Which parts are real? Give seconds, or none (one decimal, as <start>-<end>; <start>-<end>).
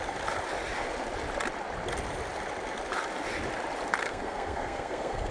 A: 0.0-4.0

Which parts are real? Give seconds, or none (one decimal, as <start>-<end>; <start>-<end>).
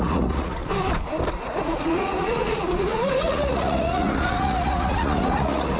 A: 0.6-1.3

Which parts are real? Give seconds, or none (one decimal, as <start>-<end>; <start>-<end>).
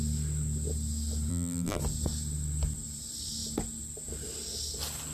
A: 0.0-1.3; 1.8-5.1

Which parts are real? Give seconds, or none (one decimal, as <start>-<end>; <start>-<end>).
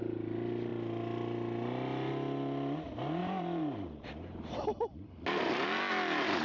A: 0.0-3.2; 4.5-6.4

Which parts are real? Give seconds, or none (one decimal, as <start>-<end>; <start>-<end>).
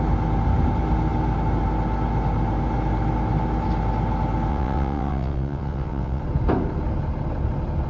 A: 0.0-4.5; 6.2-7.9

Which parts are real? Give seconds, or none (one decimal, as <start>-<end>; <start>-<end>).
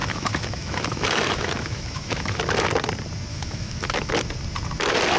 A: 2.4-3.3; 4.1-5.2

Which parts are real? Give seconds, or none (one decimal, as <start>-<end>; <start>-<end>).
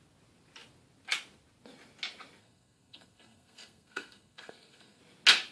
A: 0.0-2.4; 5.0-5.5